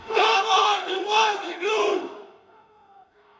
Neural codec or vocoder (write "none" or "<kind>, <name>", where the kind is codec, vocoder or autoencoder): autoencoder, DAC-VAE